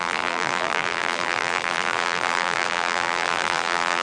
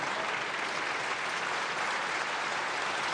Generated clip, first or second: first